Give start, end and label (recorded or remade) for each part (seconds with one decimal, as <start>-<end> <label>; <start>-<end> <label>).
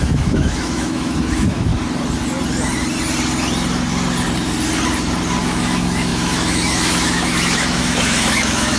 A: 0.0-1.7 remade; 1.7-5.4 recorded; 5.4-8.8 remade